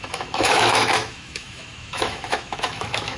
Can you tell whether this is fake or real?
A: fake